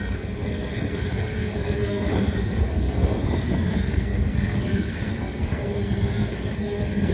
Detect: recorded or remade remade